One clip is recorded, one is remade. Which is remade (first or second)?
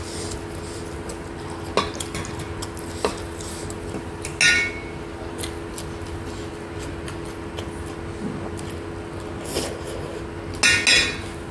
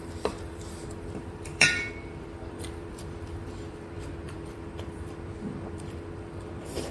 second